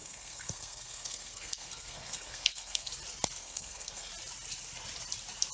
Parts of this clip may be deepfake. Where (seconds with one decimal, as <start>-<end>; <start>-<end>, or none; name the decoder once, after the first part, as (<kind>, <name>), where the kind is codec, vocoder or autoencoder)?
0.0-2.9 (codec, SNAC); 3.4-4.1